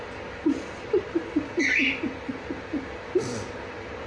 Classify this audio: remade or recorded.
recorded